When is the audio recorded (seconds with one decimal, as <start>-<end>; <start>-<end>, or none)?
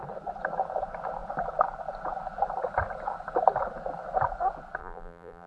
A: 0.0-4.8